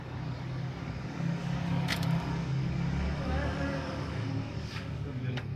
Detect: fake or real fake